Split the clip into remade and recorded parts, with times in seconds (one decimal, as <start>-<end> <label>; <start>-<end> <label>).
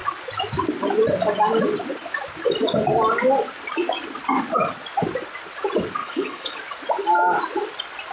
0.0-6.0 recorded; 6.0-6.6 remade; 6.6-8.1 recorded